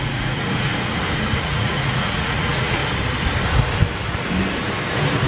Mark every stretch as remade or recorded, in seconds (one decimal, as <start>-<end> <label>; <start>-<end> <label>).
0.0-0.7 remade; 0.7-1.4 recorded; 1.4-2.8 remade; 2.8-5.3 recorded